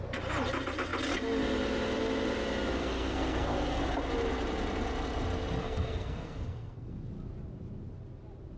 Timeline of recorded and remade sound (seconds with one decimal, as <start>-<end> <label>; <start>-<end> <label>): 0.0-2.8 recorded; 2.8-3.8 remade; 3.8-5.6 recorded; 5.6-7.1 remade; 7.1-8.6 recorded